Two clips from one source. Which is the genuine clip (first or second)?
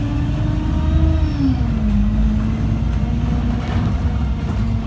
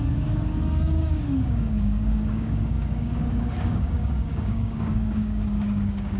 first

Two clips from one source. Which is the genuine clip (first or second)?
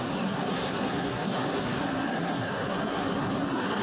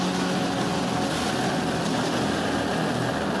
second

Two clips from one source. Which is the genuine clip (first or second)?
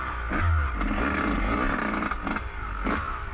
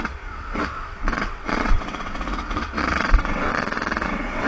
first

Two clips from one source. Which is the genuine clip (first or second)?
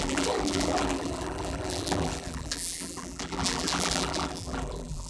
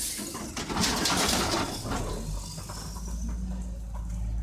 second